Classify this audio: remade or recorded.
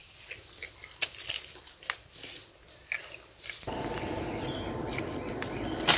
recorded